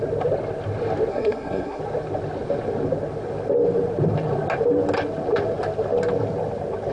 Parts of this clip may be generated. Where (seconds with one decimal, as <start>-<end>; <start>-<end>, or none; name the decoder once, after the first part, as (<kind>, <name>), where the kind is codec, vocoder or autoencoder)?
1.1-1.8 (codec, SNAC)